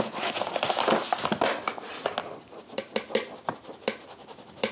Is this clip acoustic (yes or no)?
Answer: yes